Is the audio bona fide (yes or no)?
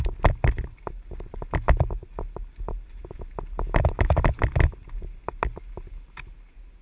yes